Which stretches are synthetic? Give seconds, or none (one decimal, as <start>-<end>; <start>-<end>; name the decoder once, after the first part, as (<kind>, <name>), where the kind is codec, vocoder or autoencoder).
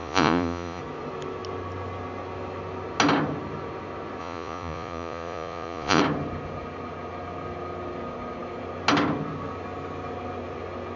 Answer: 0.0-0.8 (vocoder, Vocos); 4.2-6.0